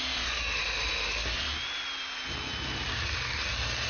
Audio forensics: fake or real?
real